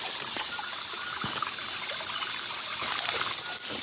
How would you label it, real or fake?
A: real